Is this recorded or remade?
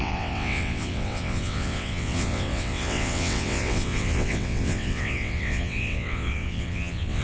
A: remade